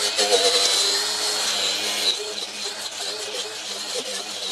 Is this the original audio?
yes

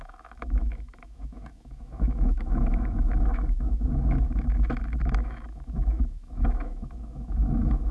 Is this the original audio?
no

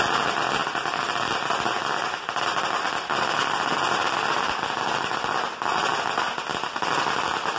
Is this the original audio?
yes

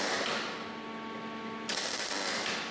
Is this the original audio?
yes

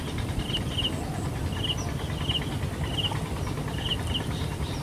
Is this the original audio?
yes